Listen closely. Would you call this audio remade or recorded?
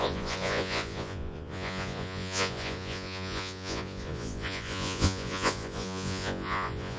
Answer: remade